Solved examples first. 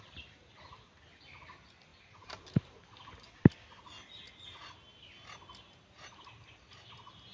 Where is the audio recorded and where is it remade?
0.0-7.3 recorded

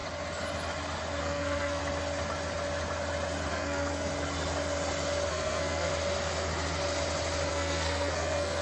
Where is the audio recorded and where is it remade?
0.0-1.2 recorded; 1.2-1.8 remade; 1.8-3.5 recorded; 3.5-4.1 remade; 4.1-5.3 recorded; 5.3-5.9 remade; 5.9-7.5 recorded; 7.5-8.6 remade

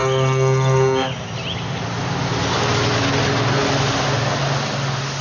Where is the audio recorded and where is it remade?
0.0-5.2 recorded

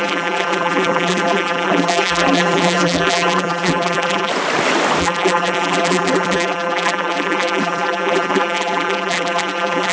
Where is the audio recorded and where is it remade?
0.0-4.3 remade; 4.3-5.0 recorded; 5.0-9.9 remade

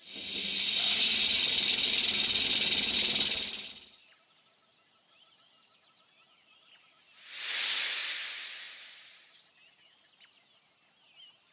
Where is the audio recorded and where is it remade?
0.0-4.0 recorded; 4.0-7.5 remade; 7.5-8.0 recorded; 8.0-9.3 remade; 9.3-11.5 recorded